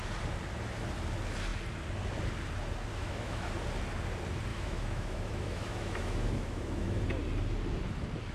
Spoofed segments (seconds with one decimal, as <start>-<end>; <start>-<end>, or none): 2.9-3.5; 4.5-7.0